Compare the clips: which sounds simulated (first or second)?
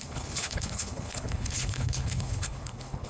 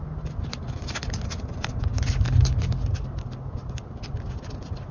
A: first